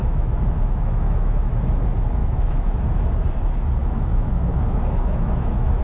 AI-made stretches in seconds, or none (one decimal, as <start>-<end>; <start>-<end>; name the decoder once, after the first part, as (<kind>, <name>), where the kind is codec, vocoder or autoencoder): 0.0-1.5 (autoencoder, DAC-VAE); 2.2-2.7; 3.8-5.8